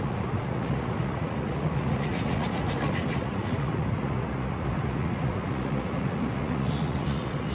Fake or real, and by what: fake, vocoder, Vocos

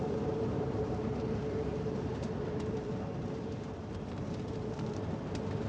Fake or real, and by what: fake, vocoder, BigVGAN v2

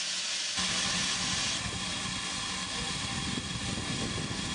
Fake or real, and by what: real